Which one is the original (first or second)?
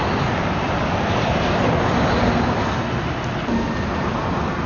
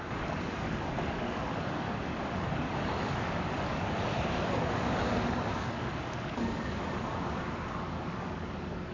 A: first